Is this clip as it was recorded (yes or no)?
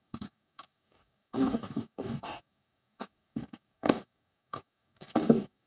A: no